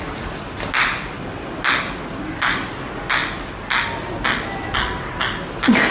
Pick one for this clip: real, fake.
real